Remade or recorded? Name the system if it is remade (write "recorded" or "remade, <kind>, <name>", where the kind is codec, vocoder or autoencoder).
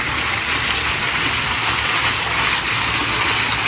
recorded